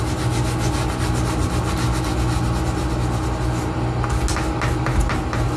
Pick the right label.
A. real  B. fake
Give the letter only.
A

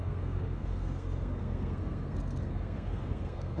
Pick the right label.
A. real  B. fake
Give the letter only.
B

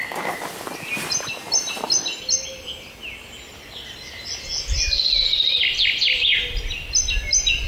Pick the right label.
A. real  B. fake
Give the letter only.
A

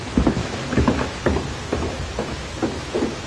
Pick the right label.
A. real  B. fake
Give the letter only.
B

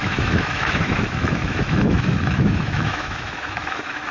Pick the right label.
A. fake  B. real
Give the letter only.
A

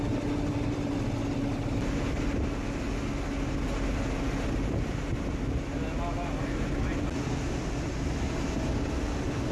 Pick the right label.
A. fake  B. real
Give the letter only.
B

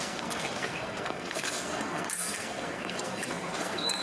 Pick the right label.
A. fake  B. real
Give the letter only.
A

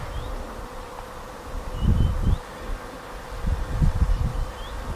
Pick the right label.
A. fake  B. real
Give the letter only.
B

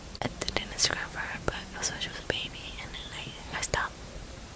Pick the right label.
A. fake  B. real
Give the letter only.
A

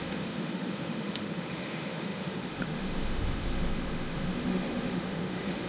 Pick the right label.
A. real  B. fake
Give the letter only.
B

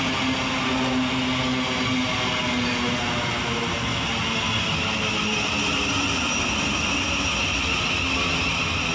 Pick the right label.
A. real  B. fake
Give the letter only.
A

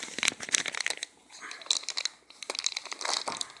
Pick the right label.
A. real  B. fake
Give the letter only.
A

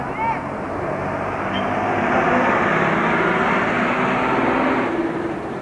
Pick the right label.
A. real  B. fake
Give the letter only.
A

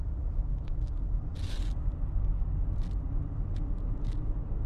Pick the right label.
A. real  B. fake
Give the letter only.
A